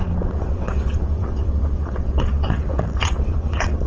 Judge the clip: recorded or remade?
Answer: remade